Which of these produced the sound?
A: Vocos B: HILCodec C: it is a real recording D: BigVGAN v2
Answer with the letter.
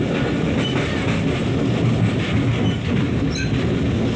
C